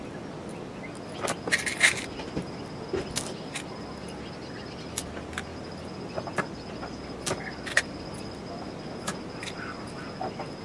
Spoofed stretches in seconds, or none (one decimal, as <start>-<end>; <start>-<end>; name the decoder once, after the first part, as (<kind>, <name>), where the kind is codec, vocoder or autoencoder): none